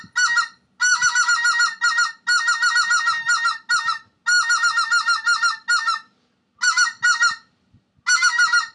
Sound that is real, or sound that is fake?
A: real